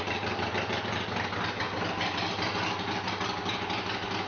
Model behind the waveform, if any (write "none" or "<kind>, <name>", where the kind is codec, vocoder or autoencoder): none